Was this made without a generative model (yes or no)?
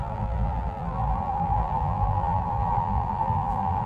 no